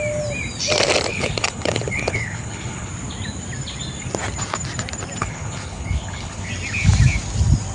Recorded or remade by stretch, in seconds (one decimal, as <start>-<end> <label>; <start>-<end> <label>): 0.0-1.1 recorded; 1.1-2.9 remade; 2.9-5.2 recorded; 5.2-6.5 remade; 6.5-7.7 recorded